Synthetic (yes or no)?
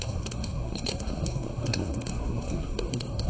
yes